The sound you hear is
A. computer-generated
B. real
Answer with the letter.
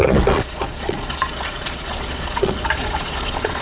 A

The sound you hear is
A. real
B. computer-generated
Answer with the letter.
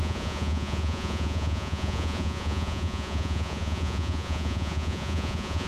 B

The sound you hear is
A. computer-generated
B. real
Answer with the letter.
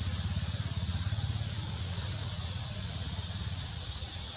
A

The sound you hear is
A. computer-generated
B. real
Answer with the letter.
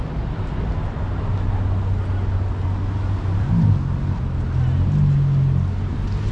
B